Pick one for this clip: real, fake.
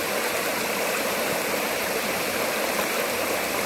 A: fake